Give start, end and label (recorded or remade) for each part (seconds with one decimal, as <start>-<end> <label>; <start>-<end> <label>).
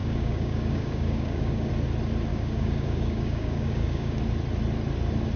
0.0-1.7 remade; 1.7-2.3 recorded; 2.3-4.2 remade; 4.2-5.4 recorded